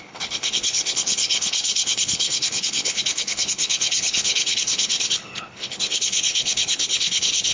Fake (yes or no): yes